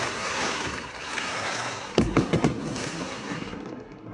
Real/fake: fake